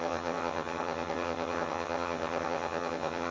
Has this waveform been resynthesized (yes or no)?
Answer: yes